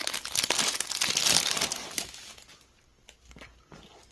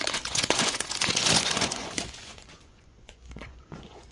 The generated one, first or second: second